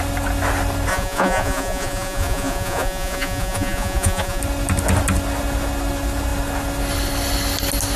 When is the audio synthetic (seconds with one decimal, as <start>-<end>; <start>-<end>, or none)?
0.9-4.4